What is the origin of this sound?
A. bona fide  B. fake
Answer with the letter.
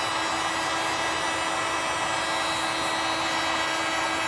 A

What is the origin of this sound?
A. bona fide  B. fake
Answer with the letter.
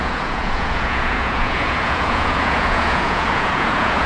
B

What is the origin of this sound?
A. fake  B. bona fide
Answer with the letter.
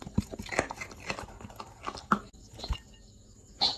B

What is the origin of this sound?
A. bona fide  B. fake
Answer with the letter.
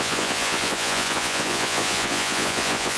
B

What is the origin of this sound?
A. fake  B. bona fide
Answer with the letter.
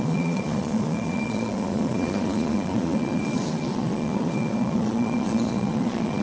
A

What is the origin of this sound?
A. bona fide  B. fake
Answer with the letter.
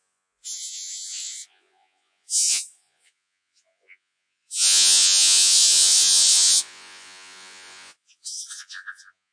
B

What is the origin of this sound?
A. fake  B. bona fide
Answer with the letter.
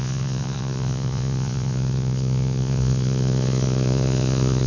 A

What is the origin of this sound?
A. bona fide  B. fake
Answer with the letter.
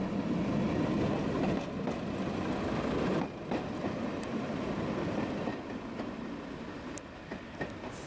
A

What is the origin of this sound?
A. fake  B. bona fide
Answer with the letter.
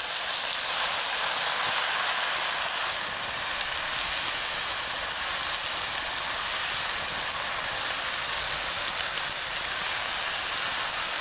B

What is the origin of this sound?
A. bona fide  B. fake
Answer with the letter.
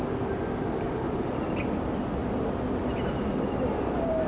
A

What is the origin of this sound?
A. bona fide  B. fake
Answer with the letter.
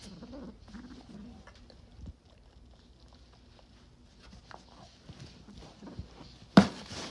A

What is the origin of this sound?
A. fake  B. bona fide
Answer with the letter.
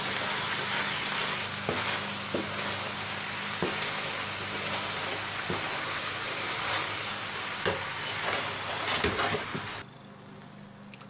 B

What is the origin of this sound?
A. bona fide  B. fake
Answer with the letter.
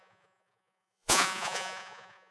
B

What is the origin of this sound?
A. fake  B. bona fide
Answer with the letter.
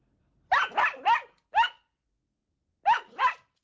B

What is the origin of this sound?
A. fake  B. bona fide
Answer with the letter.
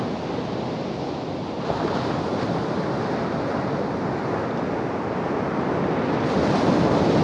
B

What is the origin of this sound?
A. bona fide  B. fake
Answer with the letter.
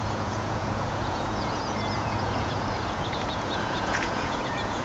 B